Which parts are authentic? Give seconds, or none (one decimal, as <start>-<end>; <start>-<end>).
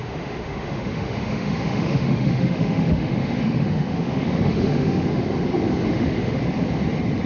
5.1-5.9; 6.4-7.3